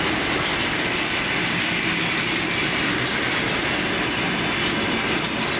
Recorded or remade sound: recorded